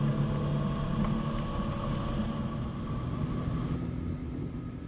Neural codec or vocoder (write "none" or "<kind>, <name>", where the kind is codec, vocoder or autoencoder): none